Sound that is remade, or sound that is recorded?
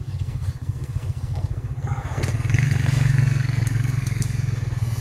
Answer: remade